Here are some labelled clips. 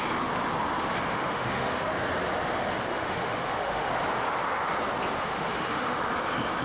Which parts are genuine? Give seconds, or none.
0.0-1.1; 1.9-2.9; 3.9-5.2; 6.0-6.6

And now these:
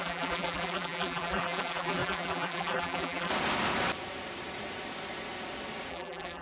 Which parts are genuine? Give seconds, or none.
3.3-5.9

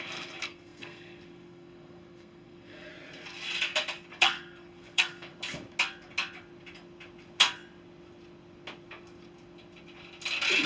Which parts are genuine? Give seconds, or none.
2.9-4.2; 5.3-10.7